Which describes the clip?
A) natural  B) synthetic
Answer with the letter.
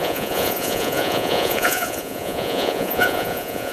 B